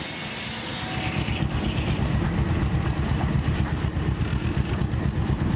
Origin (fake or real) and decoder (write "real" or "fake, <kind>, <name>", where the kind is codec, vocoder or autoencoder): real